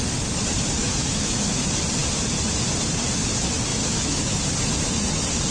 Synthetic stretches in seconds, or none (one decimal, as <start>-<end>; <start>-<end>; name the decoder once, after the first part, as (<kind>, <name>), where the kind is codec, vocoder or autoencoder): 0.8-1.6 (autoencoder, DAC-VAE); 3.7-4.4